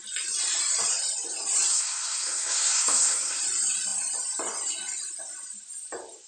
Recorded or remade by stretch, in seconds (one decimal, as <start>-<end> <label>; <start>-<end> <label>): 0.0-1.7 recorded; 1.7-3.4 remade; 3.4-6.3 recorded

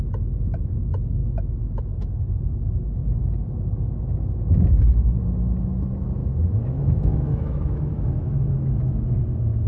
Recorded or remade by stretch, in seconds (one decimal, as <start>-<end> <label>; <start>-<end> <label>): 0.0-1.2 recorded; 1.2-1.8 remade; 1.8-6.2 recorded; 6.2-8.7 remade; 8.7-9.7 recorded

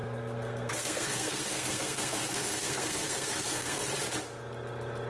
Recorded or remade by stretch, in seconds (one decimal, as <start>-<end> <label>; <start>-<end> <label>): 0.0-3.8 remade; 3.8-5.1 recorded

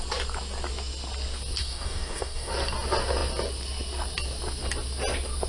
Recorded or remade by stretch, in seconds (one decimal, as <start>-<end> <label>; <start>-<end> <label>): 0.0-1.6 recorded; 1.6-2.5 remade; 2.5-5.5 recorded